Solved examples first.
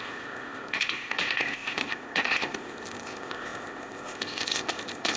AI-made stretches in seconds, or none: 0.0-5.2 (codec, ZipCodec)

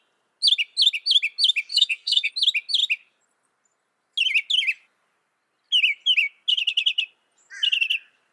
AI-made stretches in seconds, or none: 1.7-2.3 (codec, SNAC)

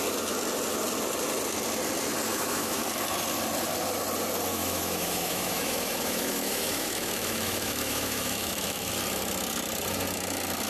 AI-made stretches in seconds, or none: 2.3-2.8 (autoencoder, DAC-VAE); 4.5-8.9

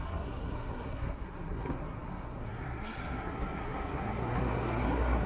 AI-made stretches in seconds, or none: 0.0-5.3 (codec, SNAC)

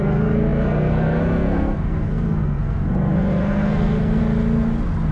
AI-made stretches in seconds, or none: 0.0-4.2 (codec, SNAC)